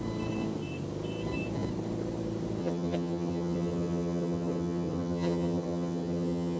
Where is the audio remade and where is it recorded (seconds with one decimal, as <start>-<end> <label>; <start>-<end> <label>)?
0.0-2.6 recorded; 2.6-6.6 remade